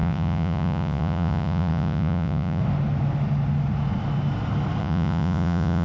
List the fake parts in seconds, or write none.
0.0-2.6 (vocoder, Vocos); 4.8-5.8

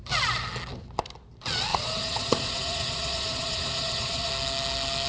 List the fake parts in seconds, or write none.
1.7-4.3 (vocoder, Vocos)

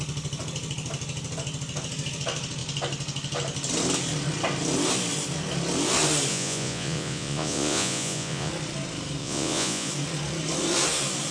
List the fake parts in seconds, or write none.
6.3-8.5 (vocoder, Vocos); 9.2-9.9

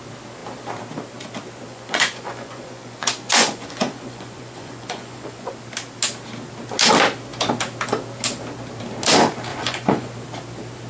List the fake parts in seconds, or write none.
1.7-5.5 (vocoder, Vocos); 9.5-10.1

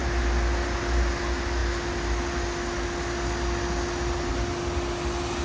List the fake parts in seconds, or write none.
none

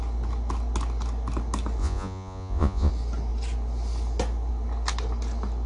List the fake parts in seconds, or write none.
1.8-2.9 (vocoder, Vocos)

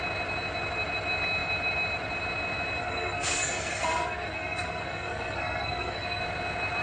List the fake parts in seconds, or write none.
2.8-6.2 (codec, SNAC)